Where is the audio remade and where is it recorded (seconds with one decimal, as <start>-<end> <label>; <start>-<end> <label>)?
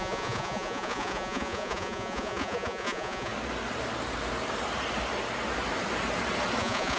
0.0-3.3 remade; 3.3-6.6 recorded; 6.6-7.0 remade